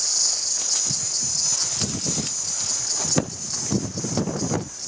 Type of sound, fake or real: real